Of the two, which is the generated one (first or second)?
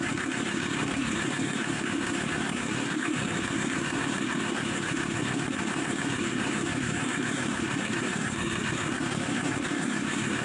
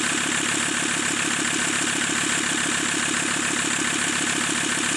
first